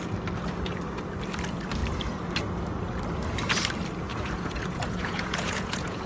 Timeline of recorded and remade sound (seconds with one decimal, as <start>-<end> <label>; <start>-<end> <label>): 0.0-4.1 recorded; 4.1-6.1 remade